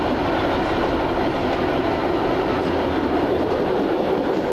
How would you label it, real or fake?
real